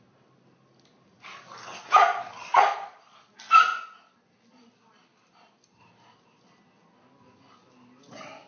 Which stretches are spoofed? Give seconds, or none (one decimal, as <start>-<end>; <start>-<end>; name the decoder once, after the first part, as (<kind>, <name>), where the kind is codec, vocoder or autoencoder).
2.7-3.2 (vocoder, Vocos)